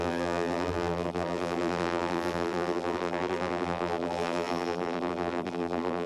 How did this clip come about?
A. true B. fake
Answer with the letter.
B